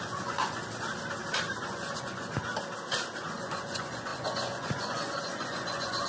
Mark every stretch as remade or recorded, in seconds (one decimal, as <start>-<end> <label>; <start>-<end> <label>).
0.0-0.6 remade; 0.6-1.6 recorded; 1.6-2.4 remade; 2.4-3.2 recorded; 3.2-6.1 remade